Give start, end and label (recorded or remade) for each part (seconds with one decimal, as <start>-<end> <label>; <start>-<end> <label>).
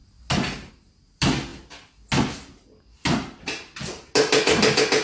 0.0-5.0 recorded